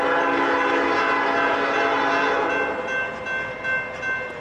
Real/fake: real